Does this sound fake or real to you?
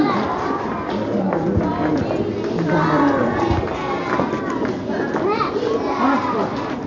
real